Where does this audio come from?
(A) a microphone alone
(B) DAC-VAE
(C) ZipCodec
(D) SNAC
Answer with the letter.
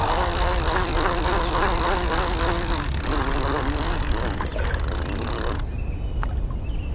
A